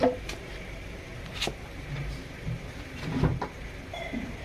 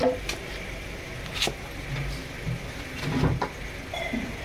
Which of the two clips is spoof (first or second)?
first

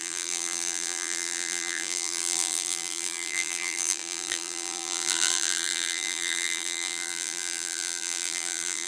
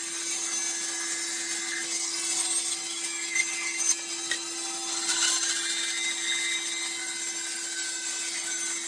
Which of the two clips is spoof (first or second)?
first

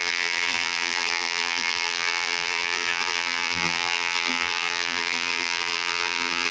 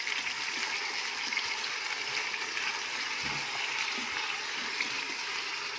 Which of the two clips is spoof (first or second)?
first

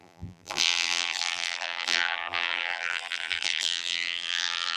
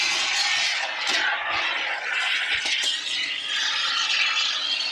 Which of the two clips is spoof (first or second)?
first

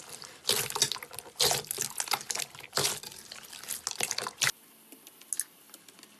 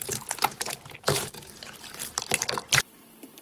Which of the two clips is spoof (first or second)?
second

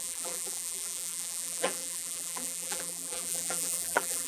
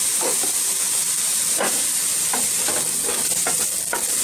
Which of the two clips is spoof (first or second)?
first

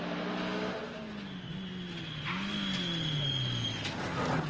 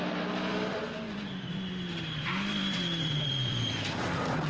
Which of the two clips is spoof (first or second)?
second